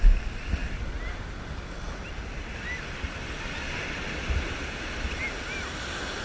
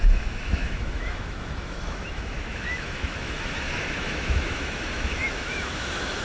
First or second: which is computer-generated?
second